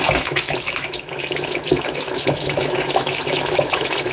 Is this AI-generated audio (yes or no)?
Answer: yes